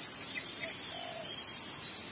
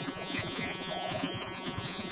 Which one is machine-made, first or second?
second